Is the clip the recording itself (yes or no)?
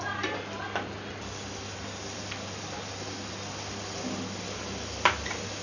yes